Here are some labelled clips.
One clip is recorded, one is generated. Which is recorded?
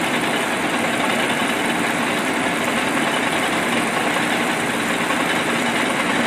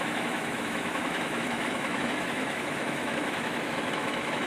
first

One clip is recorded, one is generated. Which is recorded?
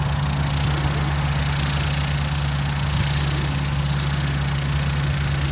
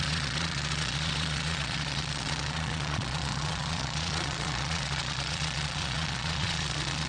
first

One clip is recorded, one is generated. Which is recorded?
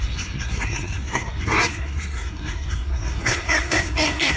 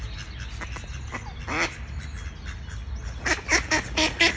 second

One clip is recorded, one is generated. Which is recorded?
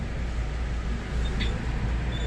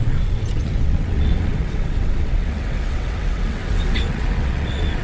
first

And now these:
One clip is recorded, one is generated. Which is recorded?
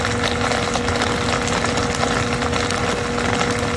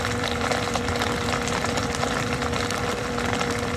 first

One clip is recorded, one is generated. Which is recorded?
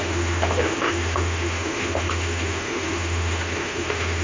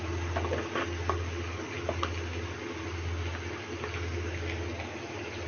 second